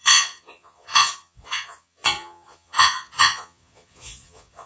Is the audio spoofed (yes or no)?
yes